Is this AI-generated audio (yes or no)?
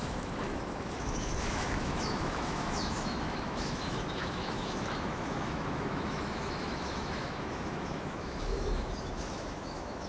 yes